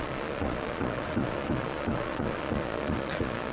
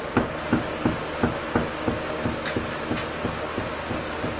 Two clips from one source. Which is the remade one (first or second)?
first